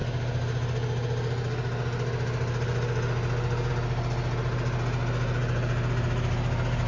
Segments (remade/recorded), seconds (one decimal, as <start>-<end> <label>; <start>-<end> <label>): 0.0-6.9 recorded